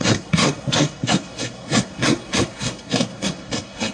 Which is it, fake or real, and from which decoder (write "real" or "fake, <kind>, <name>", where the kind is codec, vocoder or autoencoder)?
fake, codec, SNAC